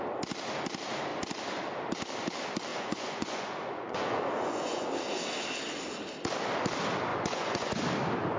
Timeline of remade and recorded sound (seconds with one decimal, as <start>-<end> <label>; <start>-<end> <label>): 0.0-2.7 recorded; 2.7-4.9 remade; 4.9-7.1 recorded; 7.1-7.8 remade; 7.8-8.4 recorded